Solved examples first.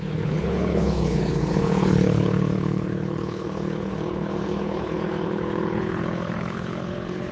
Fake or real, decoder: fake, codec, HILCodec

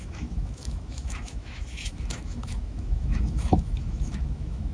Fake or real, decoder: fake, autoencoder, DAC-VAE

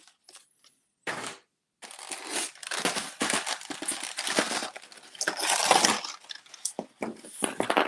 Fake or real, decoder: real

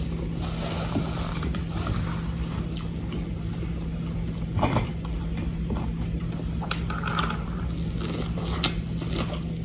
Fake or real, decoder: real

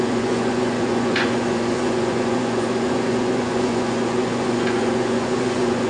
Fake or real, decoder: fake, vocoder, Vocos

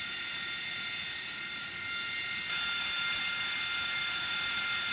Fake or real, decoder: real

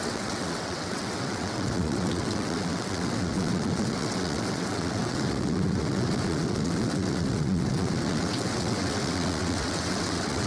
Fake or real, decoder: fake, vocoder, WaveNeXt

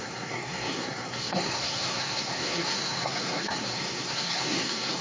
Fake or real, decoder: fake, codec, SNAC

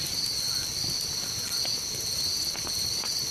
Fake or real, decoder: real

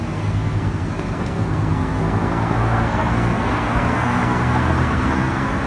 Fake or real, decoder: fake, codec, SNAC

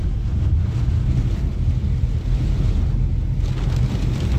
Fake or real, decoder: real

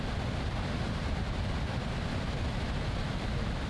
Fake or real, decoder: fake, vocoder, BigVGAN v2